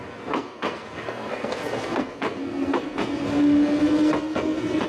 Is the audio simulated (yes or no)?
yes